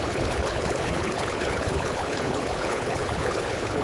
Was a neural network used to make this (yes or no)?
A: yes